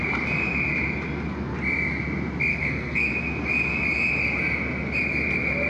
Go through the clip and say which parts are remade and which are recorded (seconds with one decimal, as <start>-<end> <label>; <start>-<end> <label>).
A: 0.0-2.5 recorded; 2.5-3.1 remade; 3.1-5.7 recorded